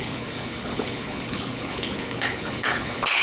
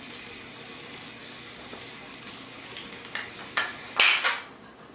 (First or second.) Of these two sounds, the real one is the second